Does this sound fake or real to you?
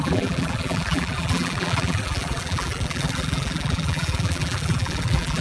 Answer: fake